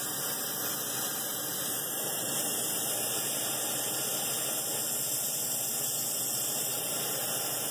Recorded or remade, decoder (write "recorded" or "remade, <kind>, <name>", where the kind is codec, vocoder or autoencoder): recorded